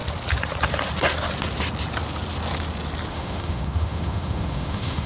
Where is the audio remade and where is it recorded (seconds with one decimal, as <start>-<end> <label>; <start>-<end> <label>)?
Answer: 0.0-3.1 recorded; 3.1-5.1 remade